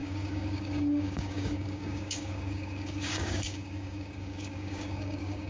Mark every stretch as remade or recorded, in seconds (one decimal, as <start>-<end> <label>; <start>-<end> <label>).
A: 0.0-5.5 remade